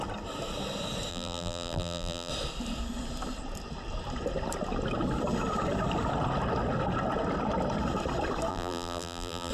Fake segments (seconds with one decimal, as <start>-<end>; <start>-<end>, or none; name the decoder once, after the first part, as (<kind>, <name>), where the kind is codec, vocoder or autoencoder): 1.1-2.3 (vocoder, BigVGAN v2); 8.5-9.5